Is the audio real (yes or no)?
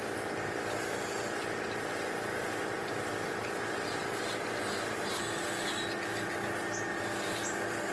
yes